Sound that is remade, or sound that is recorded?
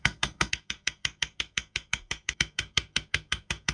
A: remade